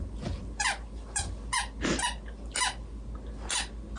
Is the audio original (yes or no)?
yes